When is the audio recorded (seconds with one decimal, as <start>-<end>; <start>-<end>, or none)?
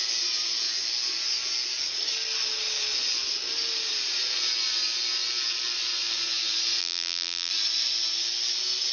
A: 0.0-6.8; 7.5-8.9